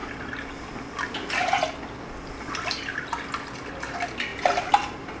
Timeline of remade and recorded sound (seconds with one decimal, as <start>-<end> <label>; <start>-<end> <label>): 0.0-5.2 recorded